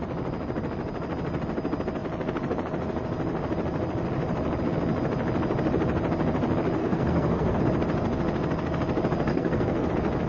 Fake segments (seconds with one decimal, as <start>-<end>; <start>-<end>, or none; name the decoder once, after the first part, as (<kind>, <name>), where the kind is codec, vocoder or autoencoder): 6.8-7.6 (codec, SNAC); 9.3-9.9